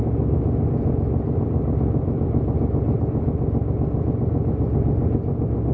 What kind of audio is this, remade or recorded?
recorded